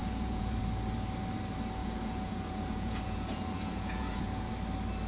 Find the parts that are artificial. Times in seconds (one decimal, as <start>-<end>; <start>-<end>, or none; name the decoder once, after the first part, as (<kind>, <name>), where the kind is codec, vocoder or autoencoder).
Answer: 0.0-0.6 (vocoder, Vocos); 1.8-4.5